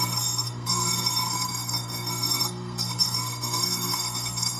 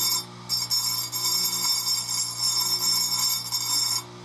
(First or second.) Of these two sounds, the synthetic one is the first